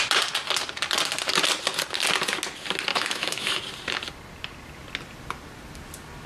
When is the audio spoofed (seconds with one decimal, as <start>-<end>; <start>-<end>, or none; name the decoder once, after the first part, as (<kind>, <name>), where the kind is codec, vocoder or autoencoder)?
2.9-3.6 (autoencoder, DAC-VAE)

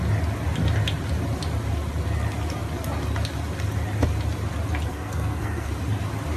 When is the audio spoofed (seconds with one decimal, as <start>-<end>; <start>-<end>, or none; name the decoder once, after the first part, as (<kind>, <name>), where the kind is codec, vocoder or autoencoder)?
4.9-5.7 (codec, SNAC)